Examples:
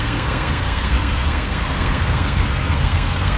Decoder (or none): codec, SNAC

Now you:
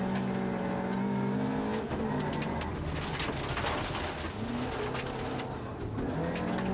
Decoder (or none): none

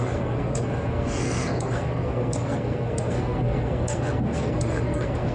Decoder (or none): codec, SNAC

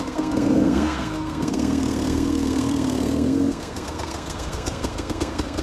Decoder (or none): codec, SNAC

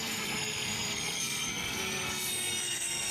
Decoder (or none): codec, SNAC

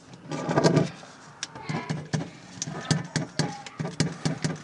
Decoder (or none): none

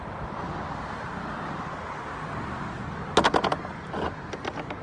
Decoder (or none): none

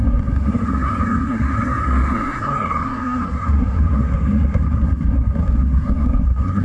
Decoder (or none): codec, SNAC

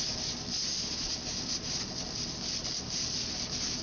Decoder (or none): none